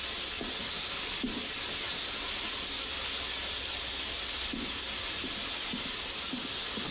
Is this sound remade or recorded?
recorded